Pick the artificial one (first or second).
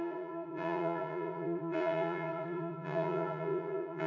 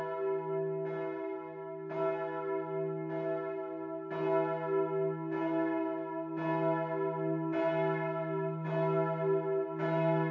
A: first